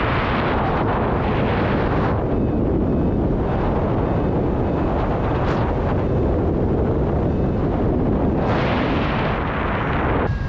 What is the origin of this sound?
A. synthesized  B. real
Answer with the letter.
B